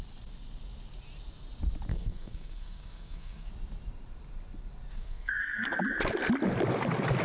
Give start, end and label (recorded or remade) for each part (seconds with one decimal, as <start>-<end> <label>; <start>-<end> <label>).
0.0-1.9 recorded; 1.9-3.5 remade; 3.5-4.9 recorded; 4.9-5.8 remade; 5.8-7.2 recorded